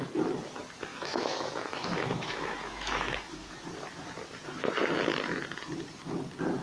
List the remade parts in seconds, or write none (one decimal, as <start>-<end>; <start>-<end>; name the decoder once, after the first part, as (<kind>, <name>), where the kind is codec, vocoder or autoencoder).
0.9-3.5 (autoencoder, DAC-VAE)